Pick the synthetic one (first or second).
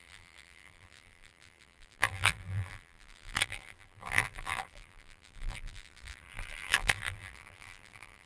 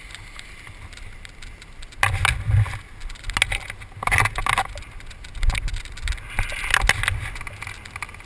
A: first